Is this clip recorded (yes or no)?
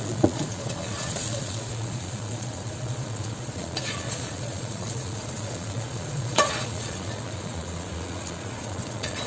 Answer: no